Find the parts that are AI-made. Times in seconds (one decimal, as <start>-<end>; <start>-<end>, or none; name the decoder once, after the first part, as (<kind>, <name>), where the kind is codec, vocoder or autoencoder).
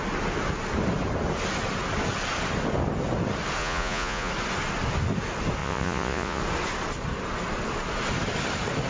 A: 3.6-4.3 (vocoder, Vocos); 5.6-6.4